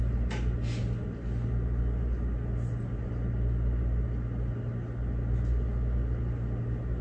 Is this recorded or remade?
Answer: recorded